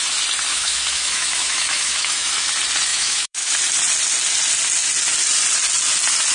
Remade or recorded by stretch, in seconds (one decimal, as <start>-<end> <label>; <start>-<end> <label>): 0.0-0.5 recorded; 0.5-2.3 remade; 2.3-2.9 recorded; 2.9-3.5 remade; 3.5-6.3 recorded